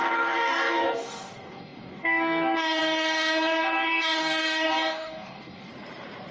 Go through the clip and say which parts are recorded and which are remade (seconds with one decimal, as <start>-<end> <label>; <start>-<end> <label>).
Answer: 0.0-5.7 remade; 5.7-6.3 recorded